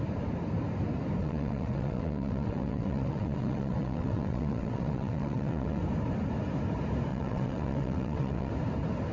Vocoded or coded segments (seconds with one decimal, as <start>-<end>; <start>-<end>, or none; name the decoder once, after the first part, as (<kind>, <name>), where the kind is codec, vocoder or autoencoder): 1.2-5.8 (vocoder, WaveNeXt); 7.1-8.5